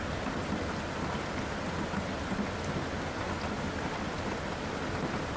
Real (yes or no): yes